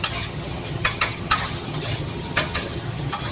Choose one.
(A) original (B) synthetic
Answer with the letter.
B